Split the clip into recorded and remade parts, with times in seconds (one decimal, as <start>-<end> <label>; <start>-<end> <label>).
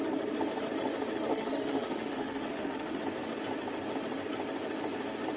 0.0-1.3 recorded; 1.3-3.0 remade; 3.0-5.4 recorded